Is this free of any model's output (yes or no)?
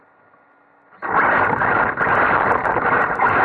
yes